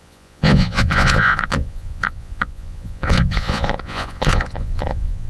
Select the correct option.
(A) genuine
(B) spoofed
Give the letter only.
B